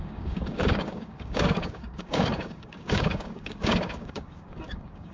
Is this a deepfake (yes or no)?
yes